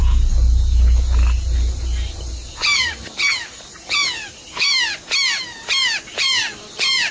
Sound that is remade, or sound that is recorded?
recorded